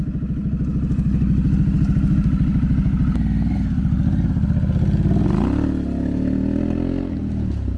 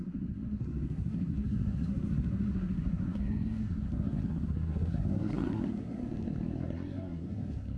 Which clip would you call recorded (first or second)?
first